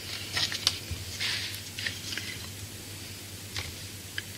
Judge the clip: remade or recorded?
recorded